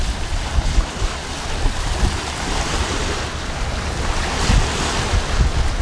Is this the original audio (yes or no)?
yes